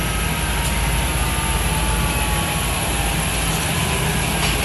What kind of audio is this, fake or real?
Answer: real